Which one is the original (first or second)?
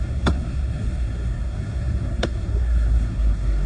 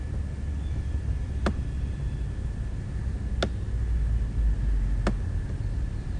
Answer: second